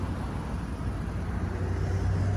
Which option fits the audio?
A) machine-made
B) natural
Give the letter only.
B